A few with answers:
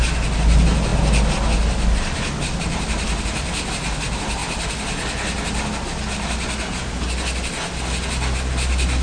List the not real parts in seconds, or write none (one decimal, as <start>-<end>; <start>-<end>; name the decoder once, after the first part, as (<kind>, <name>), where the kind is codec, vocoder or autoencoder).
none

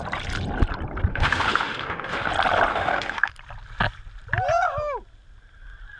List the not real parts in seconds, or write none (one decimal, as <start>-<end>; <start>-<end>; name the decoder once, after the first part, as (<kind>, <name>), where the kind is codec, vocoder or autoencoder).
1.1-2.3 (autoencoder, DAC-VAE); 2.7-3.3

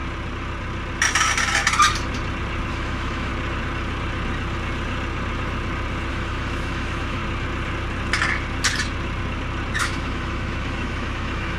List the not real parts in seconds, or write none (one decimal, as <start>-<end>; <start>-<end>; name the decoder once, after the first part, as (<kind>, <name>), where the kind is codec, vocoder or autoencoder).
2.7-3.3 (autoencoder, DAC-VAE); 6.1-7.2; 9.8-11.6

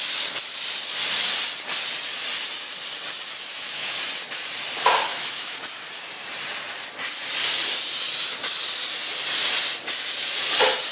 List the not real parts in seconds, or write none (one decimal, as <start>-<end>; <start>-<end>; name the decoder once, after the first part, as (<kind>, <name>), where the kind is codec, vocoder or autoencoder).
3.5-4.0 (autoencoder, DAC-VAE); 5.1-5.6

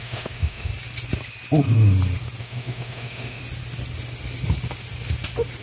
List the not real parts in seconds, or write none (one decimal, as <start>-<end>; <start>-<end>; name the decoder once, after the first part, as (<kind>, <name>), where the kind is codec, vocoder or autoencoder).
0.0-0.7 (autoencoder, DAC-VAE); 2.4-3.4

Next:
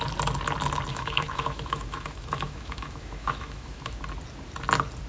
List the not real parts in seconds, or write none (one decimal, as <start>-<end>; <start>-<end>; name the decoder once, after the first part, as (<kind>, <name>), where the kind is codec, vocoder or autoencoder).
0.9-4.0 (autoencoder, DAC-VAE)